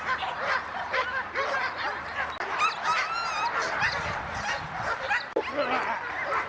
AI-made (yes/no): no